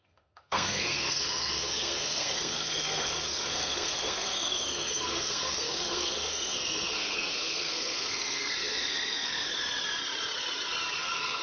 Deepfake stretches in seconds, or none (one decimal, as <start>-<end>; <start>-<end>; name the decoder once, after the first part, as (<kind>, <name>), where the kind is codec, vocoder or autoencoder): 0.0-9.5 (codec, SNAC); 11.0-11.4